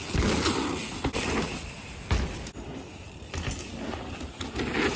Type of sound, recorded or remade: recorded